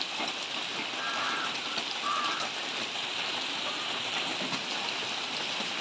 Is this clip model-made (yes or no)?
no